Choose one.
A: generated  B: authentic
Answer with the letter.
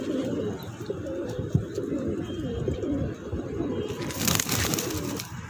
A